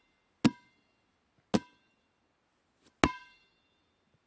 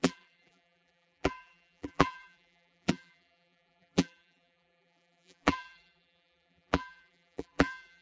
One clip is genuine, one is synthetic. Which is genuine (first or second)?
first